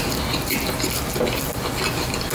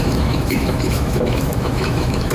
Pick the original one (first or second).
first